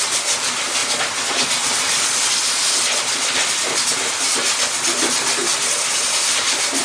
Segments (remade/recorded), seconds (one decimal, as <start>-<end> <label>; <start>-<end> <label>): 0.0-6.8 recorded